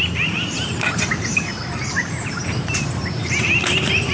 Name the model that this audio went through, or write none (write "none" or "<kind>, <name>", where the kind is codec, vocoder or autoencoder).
vocoder, BigVGAN v2